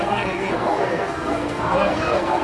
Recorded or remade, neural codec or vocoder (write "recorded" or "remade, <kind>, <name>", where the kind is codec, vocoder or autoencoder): remade, codec, SNAC